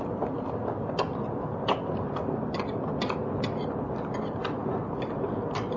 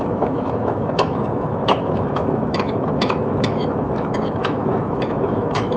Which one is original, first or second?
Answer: first